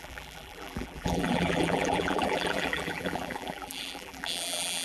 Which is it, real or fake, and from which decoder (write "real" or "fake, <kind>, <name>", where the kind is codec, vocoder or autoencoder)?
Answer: fake, vocoder, BigVGAN v2